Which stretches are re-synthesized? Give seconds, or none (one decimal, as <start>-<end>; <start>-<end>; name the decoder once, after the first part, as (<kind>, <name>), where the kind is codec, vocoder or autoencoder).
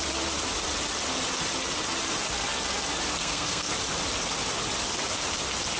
3.2-3.7 (codec, SNAC)